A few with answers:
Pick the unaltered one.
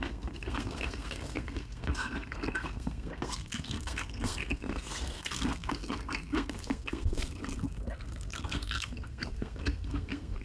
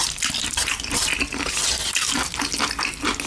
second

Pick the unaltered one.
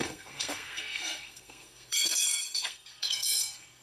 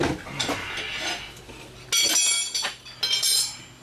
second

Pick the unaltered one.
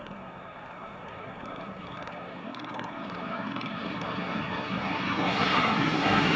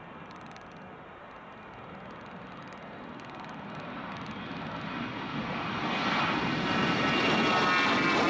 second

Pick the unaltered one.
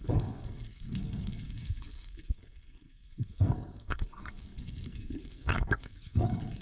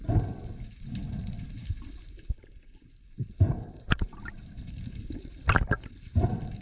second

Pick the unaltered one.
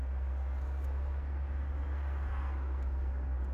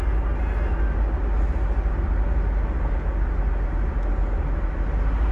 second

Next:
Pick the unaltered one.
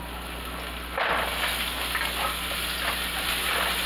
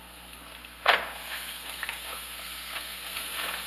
first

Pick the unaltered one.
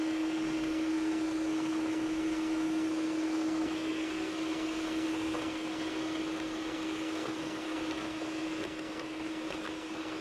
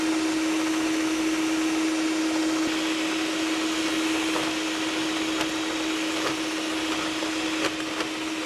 second